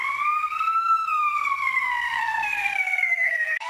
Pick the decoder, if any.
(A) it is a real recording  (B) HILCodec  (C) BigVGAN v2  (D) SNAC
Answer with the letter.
D